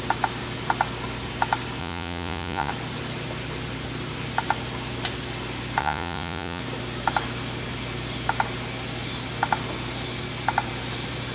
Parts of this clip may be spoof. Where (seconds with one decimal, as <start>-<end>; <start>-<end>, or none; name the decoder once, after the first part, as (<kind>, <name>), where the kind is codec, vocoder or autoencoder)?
1.8-2.7 (vocoder, Vocos); 5.8-6.6